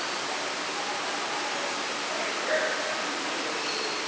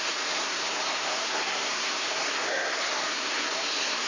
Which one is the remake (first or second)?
second